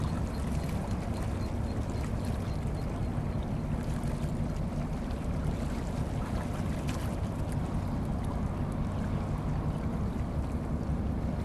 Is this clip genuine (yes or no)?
yes